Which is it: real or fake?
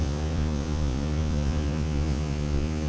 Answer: fake